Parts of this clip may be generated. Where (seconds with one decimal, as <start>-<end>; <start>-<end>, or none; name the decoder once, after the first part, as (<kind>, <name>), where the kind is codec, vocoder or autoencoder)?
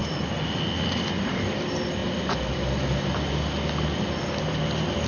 1.1-2.0 (vocoder, BigVGAN v2); 3.3-5.1